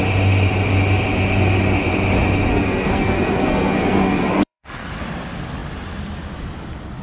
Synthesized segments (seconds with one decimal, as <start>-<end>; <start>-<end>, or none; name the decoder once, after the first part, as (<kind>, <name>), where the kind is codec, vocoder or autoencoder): 2.5-4.9 (codec, SNAC)